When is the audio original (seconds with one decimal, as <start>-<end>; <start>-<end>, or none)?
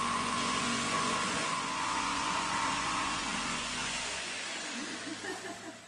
5.1-5.9